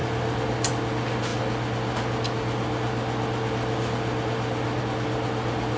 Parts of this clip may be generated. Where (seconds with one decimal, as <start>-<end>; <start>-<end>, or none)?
none